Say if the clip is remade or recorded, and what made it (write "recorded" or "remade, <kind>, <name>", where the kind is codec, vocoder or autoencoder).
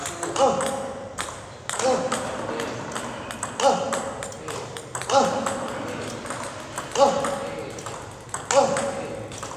recorded